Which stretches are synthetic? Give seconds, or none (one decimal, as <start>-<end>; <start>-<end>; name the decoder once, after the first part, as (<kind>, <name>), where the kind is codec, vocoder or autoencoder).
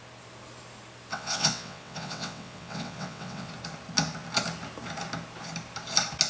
1.1-3.5 (vocoder, WaveNeXt)